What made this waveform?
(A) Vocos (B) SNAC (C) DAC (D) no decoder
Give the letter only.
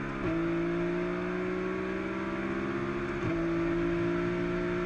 D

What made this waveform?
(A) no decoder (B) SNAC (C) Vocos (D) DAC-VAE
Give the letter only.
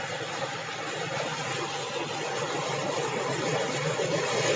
A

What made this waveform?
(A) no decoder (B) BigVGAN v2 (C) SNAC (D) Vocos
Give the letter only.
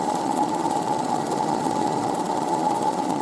D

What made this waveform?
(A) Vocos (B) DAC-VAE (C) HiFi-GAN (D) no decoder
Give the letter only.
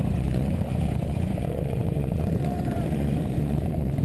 A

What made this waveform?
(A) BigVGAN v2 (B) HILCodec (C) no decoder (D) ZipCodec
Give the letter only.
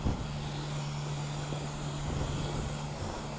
C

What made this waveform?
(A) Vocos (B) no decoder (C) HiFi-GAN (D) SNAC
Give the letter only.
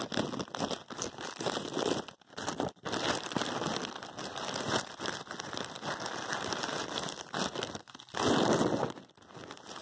B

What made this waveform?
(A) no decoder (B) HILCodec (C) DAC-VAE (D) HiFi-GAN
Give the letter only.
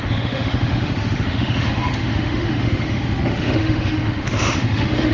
C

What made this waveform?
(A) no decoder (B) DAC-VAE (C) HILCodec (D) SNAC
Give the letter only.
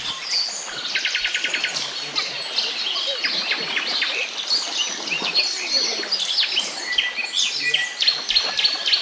A